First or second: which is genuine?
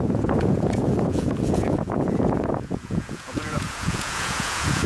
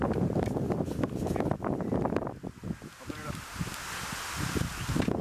second